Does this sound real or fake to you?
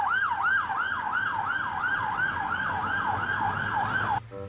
real